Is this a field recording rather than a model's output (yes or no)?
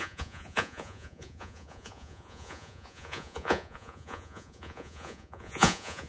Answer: no